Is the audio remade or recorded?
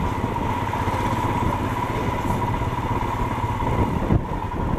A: recorded